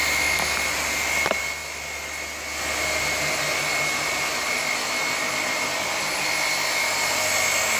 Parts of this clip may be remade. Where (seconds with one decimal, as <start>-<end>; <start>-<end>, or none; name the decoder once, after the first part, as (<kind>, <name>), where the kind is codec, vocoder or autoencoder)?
none

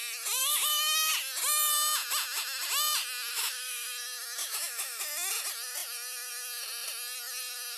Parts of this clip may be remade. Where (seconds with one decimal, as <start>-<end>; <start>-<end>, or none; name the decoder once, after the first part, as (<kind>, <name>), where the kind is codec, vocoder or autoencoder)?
0.4-1.1 (autoencoder, DAC-VAE); 3.3-3.9; 4.4-5.0